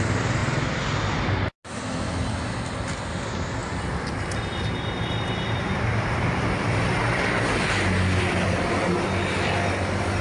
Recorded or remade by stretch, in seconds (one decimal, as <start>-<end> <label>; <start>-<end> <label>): 0.0-3.6 recorded; 3.6-8.8 remade; 8.8-10.2 recorded